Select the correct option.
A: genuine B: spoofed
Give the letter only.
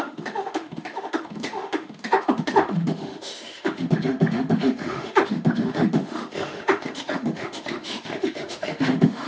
B